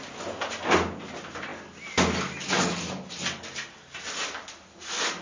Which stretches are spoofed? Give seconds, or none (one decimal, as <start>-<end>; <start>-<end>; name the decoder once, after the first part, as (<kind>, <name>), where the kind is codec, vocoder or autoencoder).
none